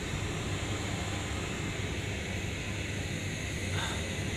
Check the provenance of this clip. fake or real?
real